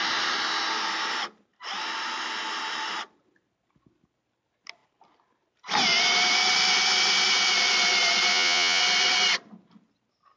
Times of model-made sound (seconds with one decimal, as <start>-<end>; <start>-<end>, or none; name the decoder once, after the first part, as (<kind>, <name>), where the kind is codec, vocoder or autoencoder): 8.3-8.8 (vocoder, Vocos)